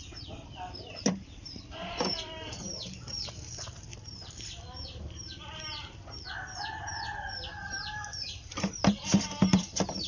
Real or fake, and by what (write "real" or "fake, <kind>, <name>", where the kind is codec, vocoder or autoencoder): fake, vocoder, BigVGAN v2